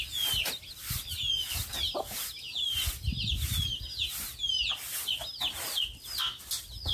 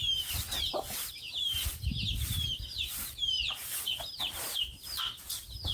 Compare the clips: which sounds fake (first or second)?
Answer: second